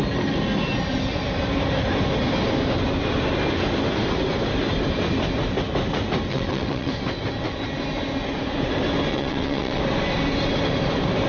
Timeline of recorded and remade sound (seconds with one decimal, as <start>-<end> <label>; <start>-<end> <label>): 0.0-6.3 recorded; 6.3-6.9 remade; 6.9-9.1 recorded; 9.1-9.8 remade; 9.8-11.3 recorded